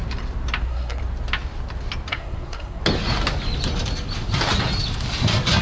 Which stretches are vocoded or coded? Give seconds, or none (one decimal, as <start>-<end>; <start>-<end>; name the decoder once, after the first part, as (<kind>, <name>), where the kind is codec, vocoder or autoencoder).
0.6-1.0 (codec, SNAC); 2.1-2.8